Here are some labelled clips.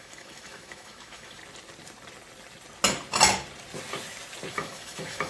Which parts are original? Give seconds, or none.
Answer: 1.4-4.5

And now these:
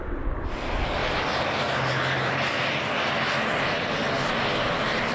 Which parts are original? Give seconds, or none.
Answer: 0.0-1.0; 1.6-5.1

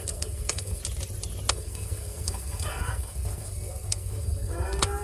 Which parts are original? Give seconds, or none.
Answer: 0.8-1.5

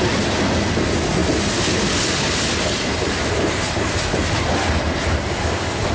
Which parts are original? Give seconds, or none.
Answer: 0.0-5.9

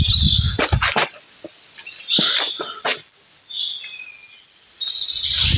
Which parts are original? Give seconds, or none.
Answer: 0.0-5.6

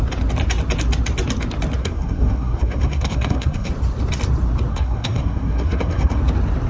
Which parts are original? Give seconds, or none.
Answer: 0.0-1.8; 3.7-4.7; 6.2-6.7

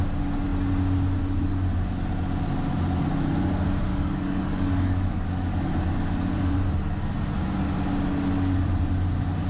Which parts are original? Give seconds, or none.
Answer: 0.0-3.9; 5.7-9.5

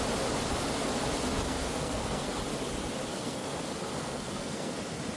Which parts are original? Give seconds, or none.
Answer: 0.0-1.4; 2.4-3.1; 4.8-5.2